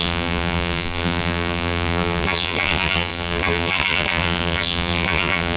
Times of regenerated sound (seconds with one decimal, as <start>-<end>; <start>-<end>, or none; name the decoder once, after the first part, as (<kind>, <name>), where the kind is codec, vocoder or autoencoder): 0.0-5.6 (vocoder, BigVGAN v2)